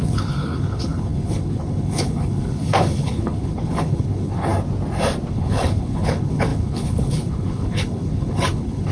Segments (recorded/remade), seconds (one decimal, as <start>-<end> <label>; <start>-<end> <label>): 0.0-4.5 remade; 4.5-5.3 recorded; 5.3-8.9 remade